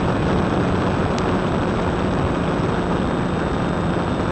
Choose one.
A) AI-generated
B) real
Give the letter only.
B